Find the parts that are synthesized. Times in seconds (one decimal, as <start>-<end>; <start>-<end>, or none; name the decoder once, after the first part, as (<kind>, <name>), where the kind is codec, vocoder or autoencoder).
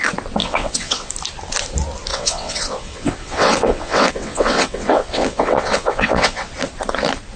0.4-1.1 (vocoder, WaveNeXt); 2.1-6.5